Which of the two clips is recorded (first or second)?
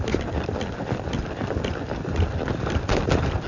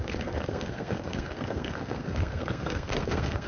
first